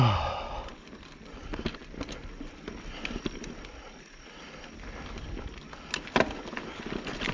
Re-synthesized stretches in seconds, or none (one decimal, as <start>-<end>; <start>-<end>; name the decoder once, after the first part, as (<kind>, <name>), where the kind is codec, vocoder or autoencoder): none